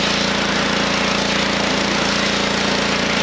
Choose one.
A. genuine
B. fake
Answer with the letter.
A